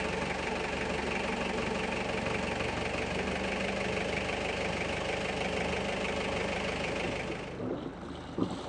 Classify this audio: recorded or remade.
recorded